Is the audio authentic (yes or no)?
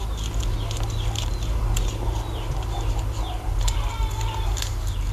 yes